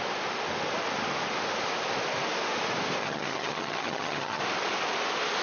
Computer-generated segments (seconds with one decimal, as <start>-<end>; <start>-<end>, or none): 3.0-4.4